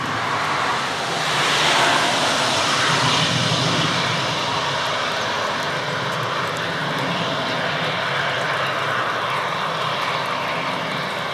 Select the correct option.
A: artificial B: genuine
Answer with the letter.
B